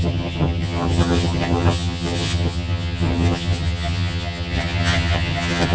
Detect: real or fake fake